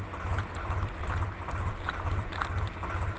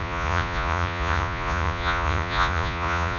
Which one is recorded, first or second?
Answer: first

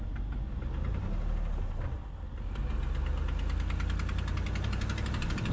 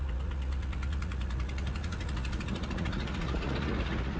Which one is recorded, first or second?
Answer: first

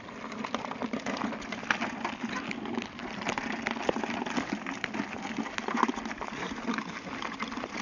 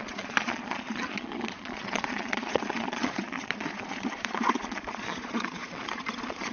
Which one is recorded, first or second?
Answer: first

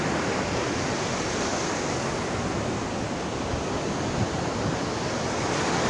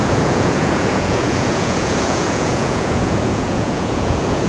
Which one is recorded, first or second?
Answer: first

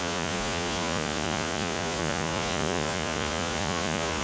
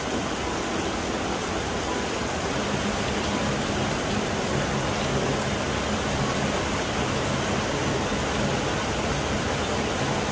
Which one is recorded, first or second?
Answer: second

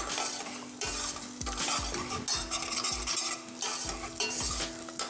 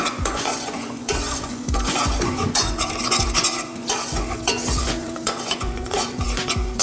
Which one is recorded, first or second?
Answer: first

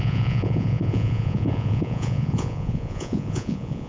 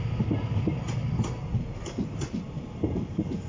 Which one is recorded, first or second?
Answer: second